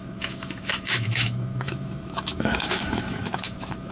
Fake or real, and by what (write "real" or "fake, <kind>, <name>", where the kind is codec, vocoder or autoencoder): fake, autoencoder, DAC-VAE